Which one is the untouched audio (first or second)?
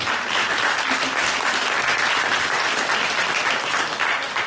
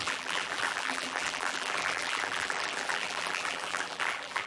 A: first